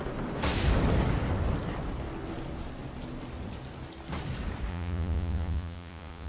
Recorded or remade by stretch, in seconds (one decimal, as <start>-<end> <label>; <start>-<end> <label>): 0.0-4.7 recorded; 4.7-6.3 remade

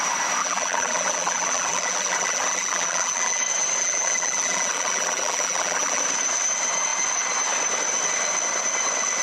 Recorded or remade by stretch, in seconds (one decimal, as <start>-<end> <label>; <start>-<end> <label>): 0.0-0.4 recorded; 0.4-3.4 remade; 3.4-3.8 recorded; 3.8-6.0 remade; 6.0-9.2 recorded